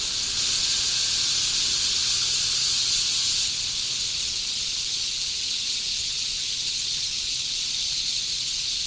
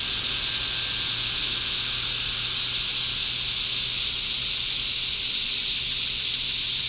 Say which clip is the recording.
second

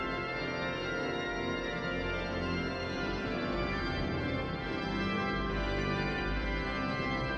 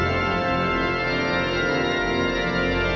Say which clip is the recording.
second